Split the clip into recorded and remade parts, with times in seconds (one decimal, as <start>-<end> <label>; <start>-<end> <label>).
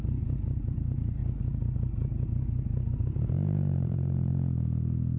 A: 0.0-1.2 remade; 1.2-3.0 recorded; 3.0-4.3 remade; 4.3-5.2 recorded